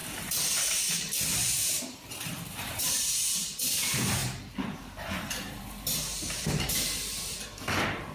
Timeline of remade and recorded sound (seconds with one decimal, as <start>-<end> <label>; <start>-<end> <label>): 0.0-4.2 remade; 4.2-4.7 recorded; 4.7-8.1 remade

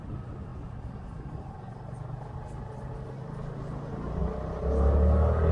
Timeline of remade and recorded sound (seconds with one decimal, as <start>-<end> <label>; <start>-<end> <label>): 0.0-5.5 recorded

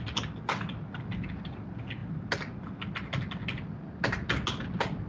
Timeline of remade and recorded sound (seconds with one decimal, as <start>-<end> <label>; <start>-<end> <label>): 0.0-5.1 recorded